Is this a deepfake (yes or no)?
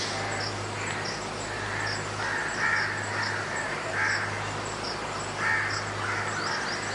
no